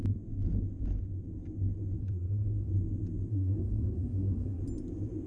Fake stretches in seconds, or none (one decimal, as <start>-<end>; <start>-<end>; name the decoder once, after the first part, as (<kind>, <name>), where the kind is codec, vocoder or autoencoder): 2.0-2.7 (codec, SNAC); 3.3-4.6